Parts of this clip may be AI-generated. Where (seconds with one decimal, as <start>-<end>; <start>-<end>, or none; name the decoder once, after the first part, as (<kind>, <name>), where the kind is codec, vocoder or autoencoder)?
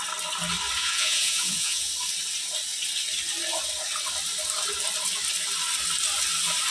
0.8-1.9 (vocoder, Vocos)